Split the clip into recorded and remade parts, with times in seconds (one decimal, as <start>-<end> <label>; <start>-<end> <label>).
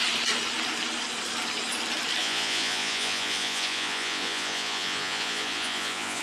0.0-2.2 recorded; 2.2-6.2 remade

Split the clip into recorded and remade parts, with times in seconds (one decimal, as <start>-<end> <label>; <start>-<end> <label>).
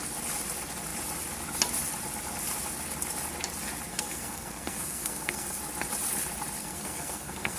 0.0-3.9 recorded; 3.9-5.6 remade; 5.6-6.6 recorded; 6.6-7.6 remade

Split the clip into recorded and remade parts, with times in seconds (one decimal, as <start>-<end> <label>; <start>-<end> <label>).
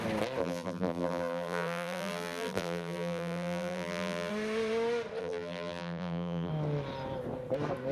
0.0-0.4 recorded; 0.4-4.3 remade; 4.3-5.2 recorded; 5.2-6.5 remade; 6.5-7.9 recorded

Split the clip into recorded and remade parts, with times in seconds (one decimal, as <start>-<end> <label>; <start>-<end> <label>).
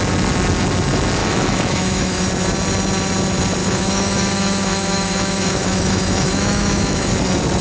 0.0-1.2 recorded; 1.2-2.2 remade; 2.2-3.6 recorded; 3.6-7.1 remade; 7.1-7.6 recorded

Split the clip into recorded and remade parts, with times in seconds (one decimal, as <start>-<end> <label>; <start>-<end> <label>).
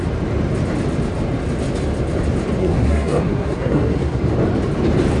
0.0-2.6 recorded; 2.6-4.2 remade; 4.2-5.2 recorded